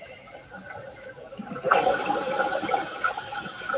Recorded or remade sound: recorded